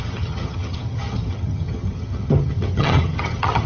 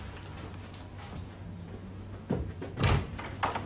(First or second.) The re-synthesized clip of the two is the first